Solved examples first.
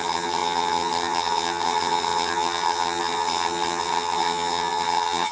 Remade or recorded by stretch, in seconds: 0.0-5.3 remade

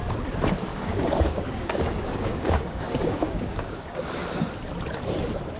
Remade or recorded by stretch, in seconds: 0.0-0.7 recorded; 0.7-4.1 remade; 4.1-5.6 recorded

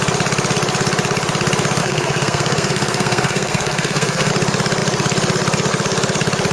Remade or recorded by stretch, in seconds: 0.0-1.8 recorded; 1.8-4.3 remade; 4.3-6.5 recorded

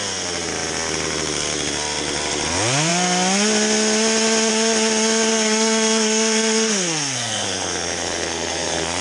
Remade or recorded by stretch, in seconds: 0.0-5.3 recorded; 5.3-9.0 remade

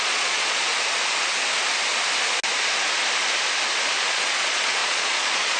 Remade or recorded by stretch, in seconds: 0.0-0.7 remade; 0.7-4.1 recorded; 4.1-5.6 remade

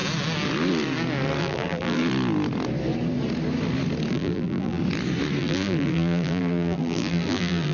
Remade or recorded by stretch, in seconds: 0.0-1.4 recorded; 1.4-2.0 remade; 2.0-4.1 recorded; 4.1-4.8 remade; 4.8-5.4 recorded; 5.4-7.7 remade

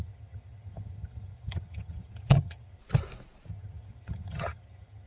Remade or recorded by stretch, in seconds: 0.0-2.8 remade; 2.8-3.5 recorded; 3.5-5.1 remade